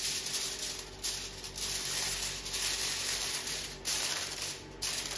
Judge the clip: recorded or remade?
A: recorded